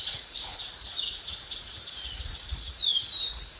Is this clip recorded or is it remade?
remade